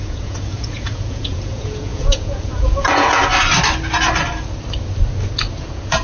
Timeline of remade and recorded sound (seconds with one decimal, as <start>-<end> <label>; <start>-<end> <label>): 0.0-3.2 remade; 3.2-5.6 recorded; 5.6-6.0 remade